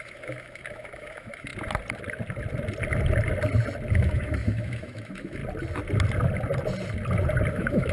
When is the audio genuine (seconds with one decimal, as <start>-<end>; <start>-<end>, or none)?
1.5-3.9; 5.4-7.5